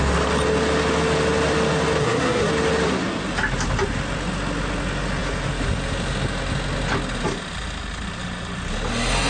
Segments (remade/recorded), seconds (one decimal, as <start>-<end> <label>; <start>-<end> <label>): 0.0-2.0 recorded; 2.0-2.5 remade; 2.5-9.3 recorded